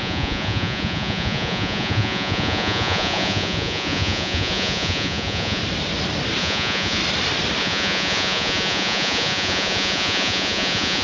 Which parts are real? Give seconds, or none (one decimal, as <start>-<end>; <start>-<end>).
5.6-6.4; 7.0-7.6